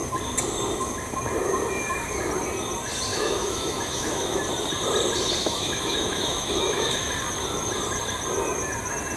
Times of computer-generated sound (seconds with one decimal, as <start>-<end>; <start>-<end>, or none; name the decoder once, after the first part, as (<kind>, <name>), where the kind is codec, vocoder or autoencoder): 3.1-4.4 (autoencoder, DAC-VAE); 5.4-7.1